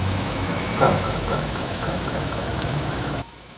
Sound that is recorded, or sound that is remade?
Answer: remade